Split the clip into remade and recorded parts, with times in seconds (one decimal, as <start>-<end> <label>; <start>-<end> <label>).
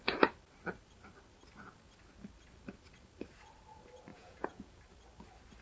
0.0-4.1 recorded; 4.1-4.8 remade; 4.8-5.6 recorded